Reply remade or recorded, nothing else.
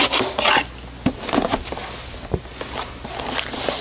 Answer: recorded